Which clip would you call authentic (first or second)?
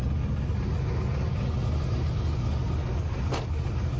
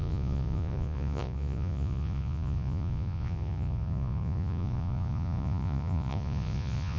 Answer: first